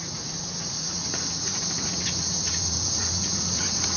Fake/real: fake